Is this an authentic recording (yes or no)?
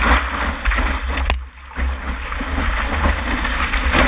yes